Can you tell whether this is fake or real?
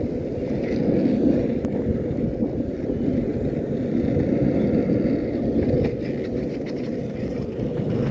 real